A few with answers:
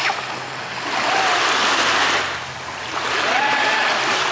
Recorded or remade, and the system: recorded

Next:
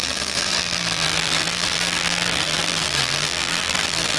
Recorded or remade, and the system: remade, vocoder, BigVGAN v2